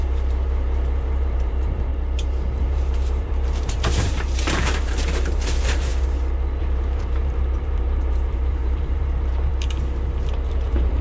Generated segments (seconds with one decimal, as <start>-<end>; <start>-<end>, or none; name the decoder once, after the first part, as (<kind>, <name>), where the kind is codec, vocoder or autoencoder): 0.0-1.9 (vocoder, BigVGAN v2); 2.6-5.9; 6.6-9.5; 10.5-11.0